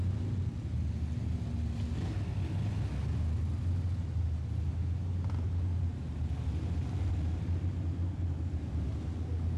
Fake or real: real